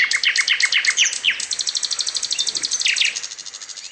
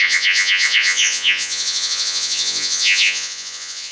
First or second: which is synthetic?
second